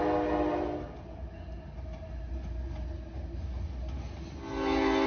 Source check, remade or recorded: recorded